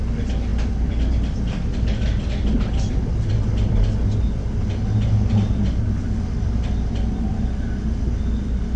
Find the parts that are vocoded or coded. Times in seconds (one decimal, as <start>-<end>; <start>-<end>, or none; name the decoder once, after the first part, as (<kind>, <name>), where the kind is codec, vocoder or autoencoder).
none